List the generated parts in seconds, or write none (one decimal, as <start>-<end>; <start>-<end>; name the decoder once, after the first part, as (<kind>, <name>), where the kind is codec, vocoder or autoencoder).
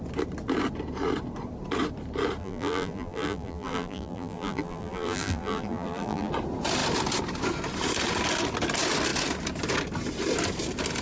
2.4-6.3 (vocoder, BigVGAN v2)